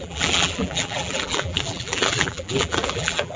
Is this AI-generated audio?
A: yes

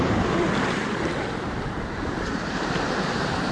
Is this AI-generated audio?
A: yes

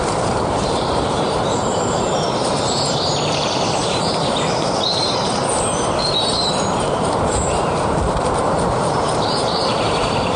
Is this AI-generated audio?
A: yes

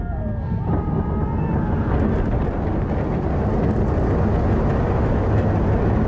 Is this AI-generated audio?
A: no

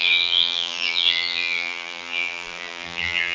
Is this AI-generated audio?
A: yes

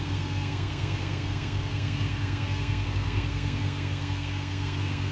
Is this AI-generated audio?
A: yes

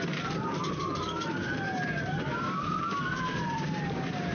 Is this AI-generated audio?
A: yes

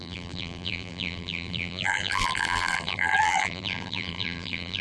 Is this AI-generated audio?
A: yes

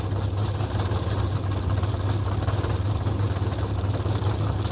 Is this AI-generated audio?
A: no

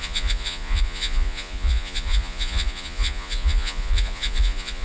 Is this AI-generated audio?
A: yes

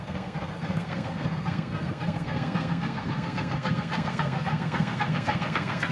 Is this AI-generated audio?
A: yes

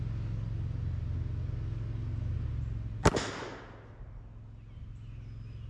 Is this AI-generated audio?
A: no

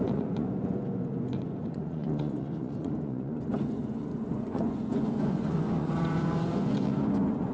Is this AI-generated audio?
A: yes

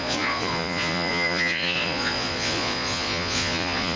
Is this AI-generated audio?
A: yes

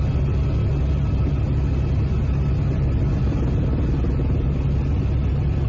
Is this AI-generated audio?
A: no